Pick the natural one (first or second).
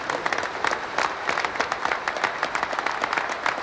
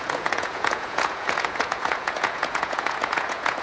first